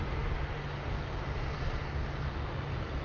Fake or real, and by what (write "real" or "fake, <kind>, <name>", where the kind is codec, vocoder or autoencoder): real